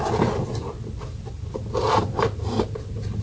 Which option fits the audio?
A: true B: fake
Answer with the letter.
A